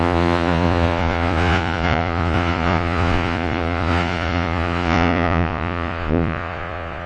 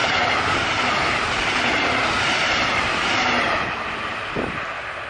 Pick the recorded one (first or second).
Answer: second